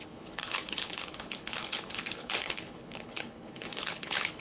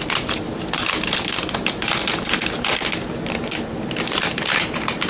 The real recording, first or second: second